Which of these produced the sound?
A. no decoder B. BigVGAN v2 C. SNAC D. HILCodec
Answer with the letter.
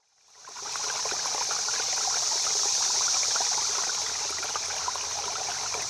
A